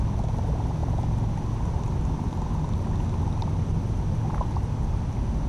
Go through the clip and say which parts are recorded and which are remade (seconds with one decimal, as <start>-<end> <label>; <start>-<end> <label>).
0.0-5.5 recorded